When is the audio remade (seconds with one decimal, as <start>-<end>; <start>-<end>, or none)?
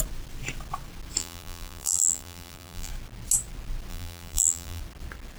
1.2-2.9; 3.9-4.8